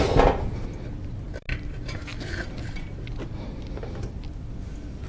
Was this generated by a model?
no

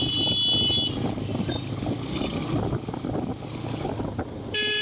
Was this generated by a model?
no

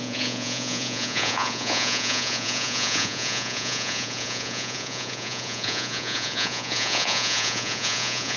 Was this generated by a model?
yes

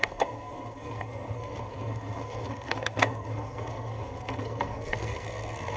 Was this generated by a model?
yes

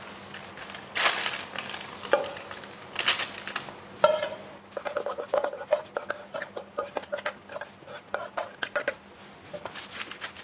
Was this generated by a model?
no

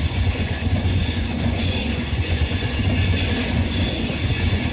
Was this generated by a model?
yes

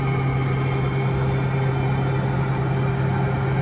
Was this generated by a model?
no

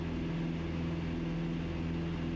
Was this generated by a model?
no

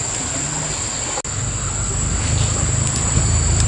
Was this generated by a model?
no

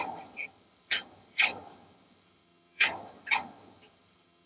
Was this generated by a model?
yes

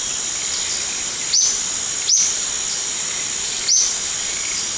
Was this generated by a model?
no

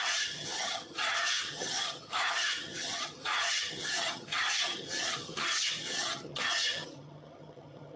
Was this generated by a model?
yes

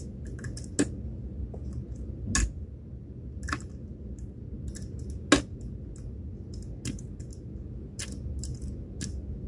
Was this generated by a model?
no